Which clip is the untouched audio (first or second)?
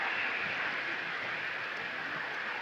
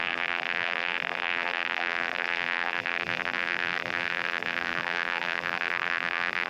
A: first